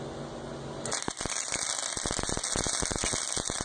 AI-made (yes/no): no